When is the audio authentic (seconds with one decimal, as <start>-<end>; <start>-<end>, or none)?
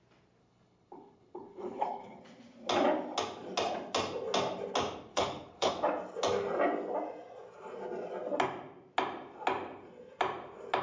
0.0-0.4; 2.2-5.1; 5.7-10.8